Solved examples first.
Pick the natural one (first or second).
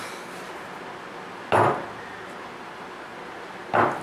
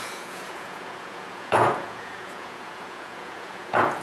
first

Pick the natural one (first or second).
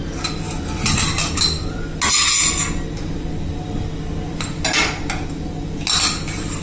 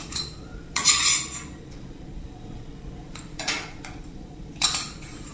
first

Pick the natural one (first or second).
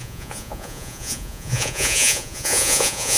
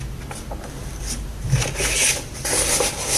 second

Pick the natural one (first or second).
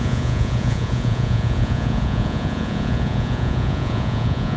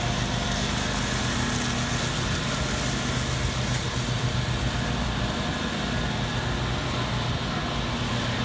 second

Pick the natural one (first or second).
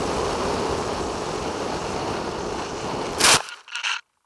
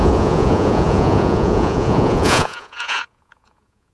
first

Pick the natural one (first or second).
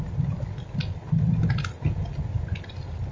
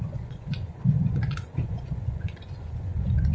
first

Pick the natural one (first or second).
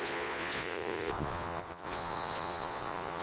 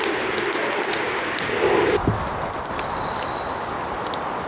second